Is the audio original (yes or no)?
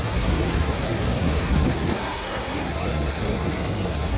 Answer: no